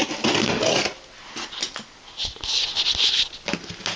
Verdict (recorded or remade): recorded